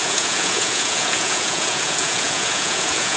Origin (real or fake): fake